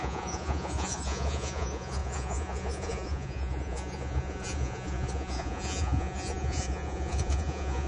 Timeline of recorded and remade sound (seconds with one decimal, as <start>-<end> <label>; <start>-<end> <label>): 0.0-7.9 remade